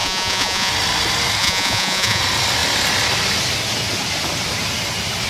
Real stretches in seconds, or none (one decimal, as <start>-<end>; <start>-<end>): 0.7-1.4; 2.2-5.3